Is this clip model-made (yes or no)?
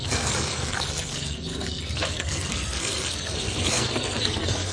yes